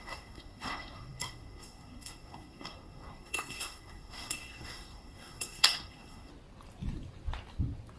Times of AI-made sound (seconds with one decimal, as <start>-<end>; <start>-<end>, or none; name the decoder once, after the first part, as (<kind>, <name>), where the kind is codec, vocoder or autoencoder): 0.0-6.3 (codec, SNAC)